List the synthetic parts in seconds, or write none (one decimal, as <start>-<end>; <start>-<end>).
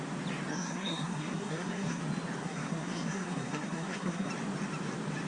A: 0.5-2.0; 2.4-4.3